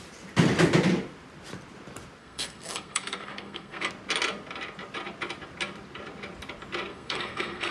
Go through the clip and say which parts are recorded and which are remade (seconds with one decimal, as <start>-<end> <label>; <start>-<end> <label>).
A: 0.0-2.2 recorded; 2.2-3.9 remade; 3.9-6.9 recorded; 6.9-7.7 remade